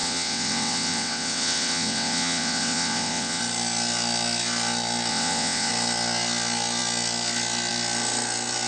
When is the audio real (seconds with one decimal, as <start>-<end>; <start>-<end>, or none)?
3.4-5.1; 5.7-8.7